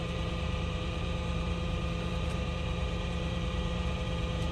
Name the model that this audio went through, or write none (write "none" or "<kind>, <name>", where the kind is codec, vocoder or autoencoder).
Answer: vocoder, BigVGAN v2